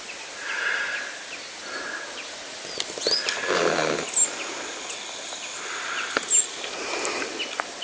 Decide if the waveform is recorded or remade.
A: recorded